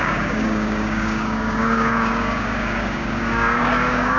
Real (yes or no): no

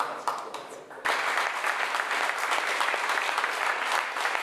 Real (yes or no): yes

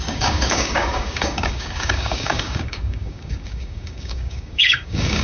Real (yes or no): no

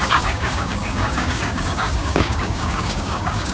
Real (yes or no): no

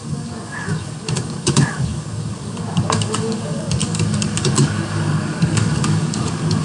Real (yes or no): no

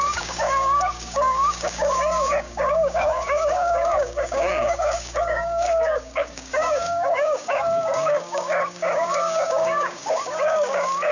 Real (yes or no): no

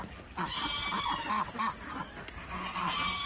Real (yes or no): yes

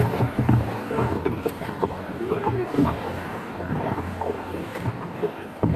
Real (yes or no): no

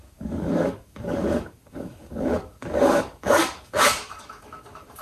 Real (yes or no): no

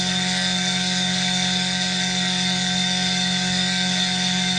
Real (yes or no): no